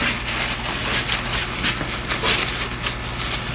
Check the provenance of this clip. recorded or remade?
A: recorded